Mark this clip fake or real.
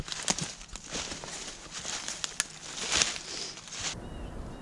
real